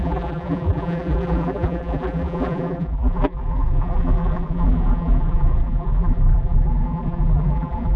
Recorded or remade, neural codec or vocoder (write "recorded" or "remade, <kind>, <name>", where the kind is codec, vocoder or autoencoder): remade, vocoder, BigVGAN v2